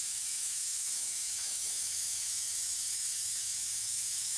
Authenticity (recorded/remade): remade